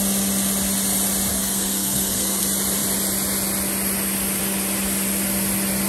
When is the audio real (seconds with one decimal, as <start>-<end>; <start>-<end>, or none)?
0.0-1.3; 2.4-5.9